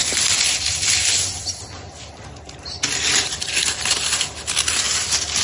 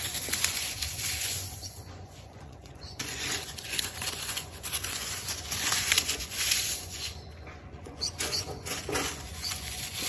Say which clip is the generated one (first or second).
second